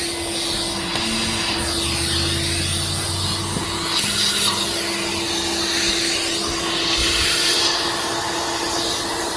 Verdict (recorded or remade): recorded